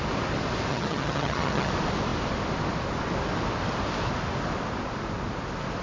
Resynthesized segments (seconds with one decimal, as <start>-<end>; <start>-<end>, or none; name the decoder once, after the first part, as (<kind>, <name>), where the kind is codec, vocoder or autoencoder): 0.7-1.7 (vocoder, HiFi-GAN)